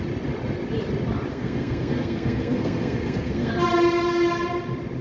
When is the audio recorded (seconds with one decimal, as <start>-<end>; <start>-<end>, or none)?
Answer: 0.0-1.3; 3.5-5.0